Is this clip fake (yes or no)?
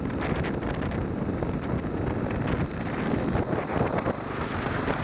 no